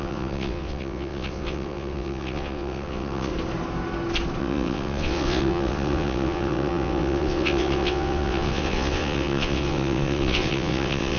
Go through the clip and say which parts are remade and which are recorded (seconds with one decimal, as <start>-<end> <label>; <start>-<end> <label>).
0.0-3.3 remade; 3.3-4.4 recorded; 4.4-11.2 remade

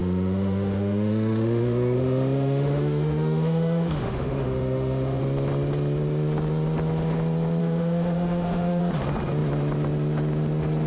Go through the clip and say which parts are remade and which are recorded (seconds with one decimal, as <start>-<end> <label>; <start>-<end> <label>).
0.0-5.2 remade; 5.2-7.6 recorded; 7.6-8.8 remade; 8.8-10.9 recorded

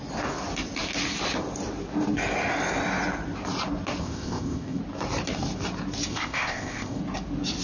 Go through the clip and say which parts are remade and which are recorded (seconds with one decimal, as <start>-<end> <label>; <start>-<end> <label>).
0.0-4.0 recorded; 4.0-4.8 remade; 4.8-6.1 recorded; 6.1-7.0 remade; 7.0-7.6 recorded

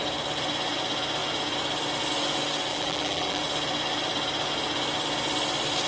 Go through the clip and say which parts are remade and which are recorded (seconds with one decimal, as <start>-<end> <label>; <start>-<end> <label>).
0.0-2.7 recorded; 2.7-3.4 remade; 3.4-5.9 recorded

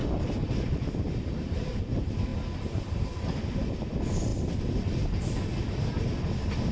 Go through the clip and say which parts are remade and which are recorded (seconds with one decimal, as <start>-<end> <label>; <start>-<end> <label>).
0.0-2.3 remade; 2.3-3.0 recorded; 3.0-6.7 remade